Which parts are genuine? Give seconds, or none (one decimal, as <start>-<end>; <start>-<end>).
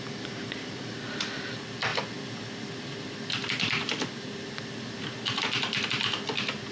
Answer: 0.0-6.7